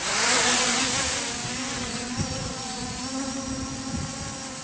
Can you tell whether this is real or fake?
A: real